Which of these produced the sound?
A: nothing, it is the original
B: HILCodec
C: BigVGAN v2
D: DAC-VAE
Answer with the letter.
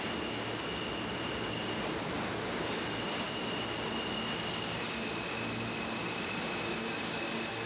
A